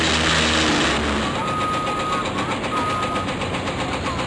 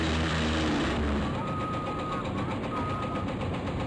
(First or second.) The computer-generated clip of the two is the second